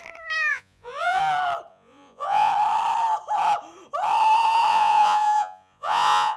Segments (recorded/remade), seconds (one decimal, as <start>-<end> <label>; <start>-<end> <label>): 0.0-0.5 recorded; 0.5-1.2 remade; 1.2-1.7 recorded; 1.7-2.5 remade; 2.5-4.7 recorded; 4.7-6.4 remade